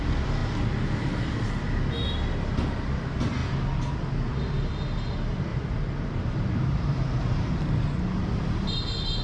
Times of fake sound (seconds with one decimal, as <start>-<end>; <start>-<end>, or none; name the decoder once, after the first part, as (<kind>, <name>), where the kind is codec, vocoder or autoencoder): 5.5-7.5 (vocoder, BigVGAN v2)